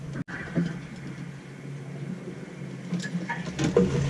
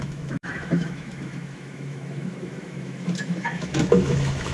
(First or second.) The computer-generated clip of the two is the second